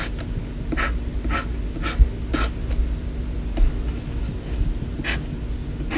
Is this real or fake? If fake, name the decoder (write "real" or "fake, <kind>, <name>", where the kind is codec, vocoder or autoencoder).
real